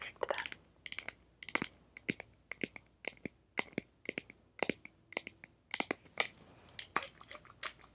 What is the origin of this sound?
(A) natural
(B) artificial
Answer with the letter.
A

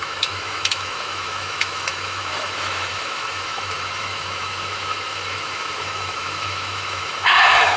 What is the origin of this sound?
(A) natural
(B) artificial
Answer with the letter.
B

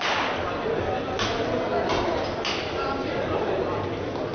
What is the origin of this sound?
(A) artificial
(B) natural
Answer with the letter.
B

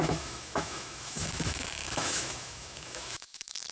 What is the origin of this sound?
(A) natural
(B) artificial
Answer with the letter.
B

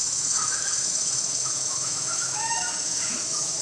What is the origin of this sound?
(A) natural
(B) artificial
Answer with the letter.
B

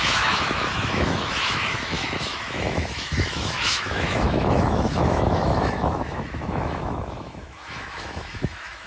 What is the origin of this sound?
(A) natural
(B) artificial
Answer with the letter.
B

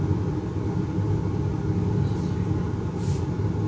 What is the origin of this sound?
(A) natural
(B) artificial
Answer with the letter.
A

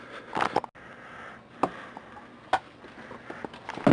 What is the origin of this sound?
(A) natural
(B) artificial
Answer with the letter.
A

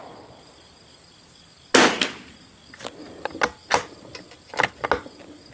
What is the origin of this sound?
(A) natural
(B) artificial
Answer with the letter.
A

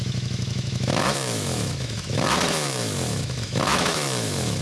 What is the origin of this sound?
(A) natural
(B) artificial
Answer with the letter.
B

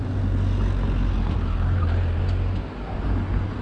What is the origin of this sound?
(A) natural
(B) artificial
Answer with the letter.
A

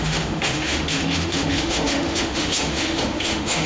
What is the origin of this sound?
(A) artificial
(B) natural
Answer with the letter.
A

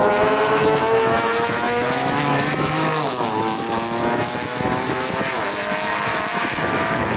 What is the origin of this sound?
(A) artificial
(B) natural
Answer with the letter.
A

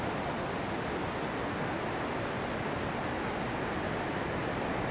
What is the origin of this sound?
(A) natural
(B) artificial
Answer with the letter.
A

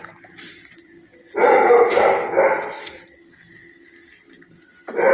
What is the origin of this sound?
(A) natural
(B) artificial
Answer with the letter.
A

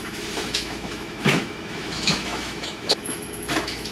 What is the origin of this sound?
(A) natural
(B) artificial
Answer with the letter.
B